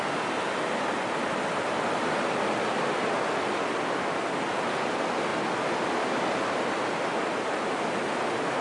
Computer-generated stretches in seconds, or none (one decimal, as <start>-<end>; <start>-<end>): none